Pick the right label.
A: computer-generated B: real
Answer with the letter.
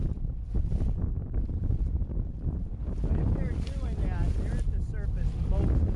B